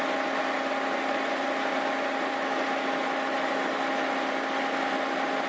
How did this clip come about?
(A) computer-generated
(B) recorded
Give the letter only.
B